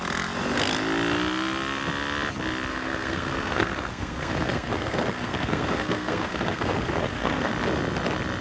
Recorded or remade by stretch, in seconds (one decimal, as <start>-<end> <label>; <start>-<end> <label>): 0.0-2.7 recorded; 2.7-7.5 remade; 7.5-8.4 recorded